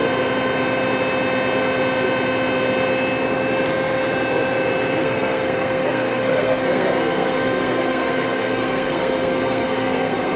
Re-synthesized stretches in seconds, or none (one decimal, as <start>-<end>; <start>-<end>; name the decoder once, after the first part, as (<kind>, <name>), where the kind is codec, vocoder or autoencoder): 5.0-10.4 (codec, SNAC)